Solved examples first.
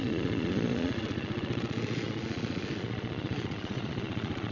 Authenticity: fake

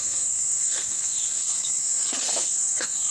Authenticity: fake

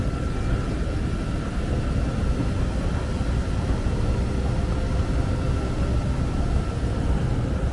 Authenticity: real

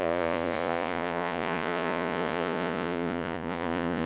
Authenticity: fake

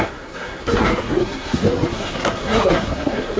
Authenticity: fake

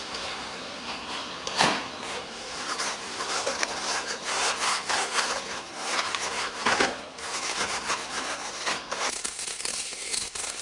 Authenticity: fake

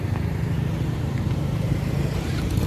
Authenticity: fake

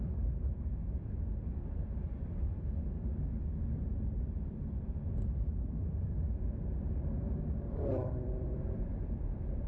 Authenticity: fake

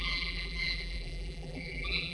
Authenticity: fake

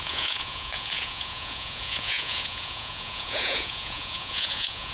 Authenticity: fake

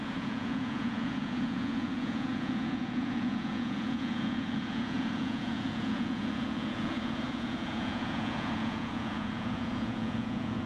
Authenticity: fake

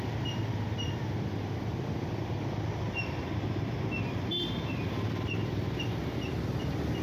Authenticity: real